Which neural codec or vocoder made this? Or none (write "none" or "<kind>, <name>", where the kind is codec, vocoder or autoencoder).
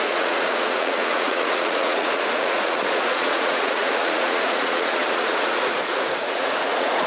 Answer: vocoder, Vocos